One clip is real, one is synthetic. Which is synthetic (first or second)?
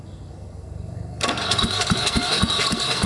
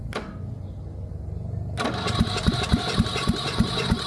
first